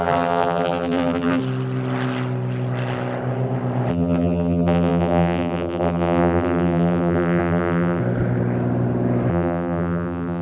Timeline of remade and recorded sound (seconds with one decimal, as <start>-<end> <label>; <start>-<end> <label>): 0.0-1.4 remade; 1.4-3.9 recorded; 3.9-8.0 remade; 8.0-9.3 recorded; 9.3-10.4 remade